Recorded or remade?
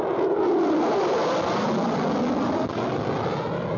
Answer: recorded